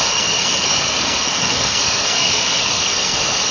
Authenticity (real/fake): fake